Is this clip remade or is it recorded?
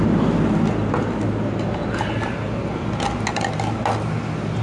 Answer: recorded